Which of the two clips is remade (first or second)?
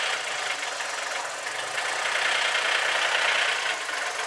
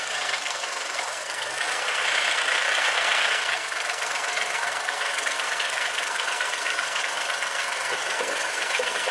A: second